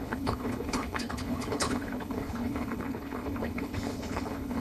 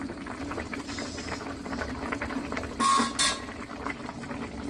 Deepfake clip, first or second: first